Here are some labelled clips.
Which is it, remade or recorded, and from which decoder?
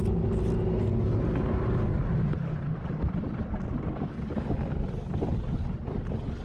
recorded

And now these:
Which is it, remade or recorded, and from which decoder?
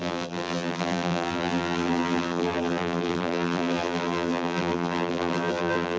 remade, vocoder, BigVGAN v2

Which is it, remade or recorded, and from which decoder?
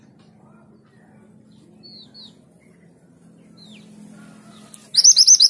recorded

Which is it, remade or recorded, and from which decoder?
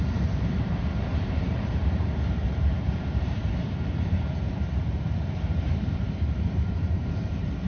remade, vocoder, BigVGAN v2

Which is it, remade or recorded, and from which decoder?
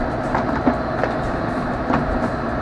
remade, vocoder, BigVGAN v2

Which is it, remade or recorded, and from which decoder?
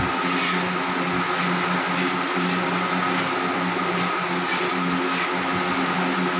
recorded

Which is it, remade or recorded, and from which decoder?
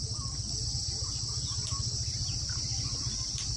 recorded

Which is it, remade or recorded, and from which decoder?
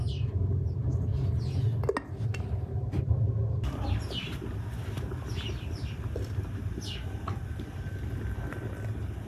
recorded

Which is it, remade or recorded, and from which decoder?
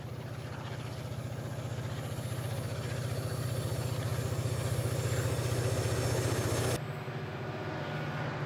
recorded